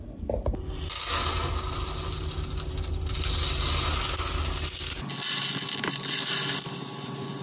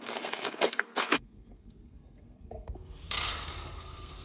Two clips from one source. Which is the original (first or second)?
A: first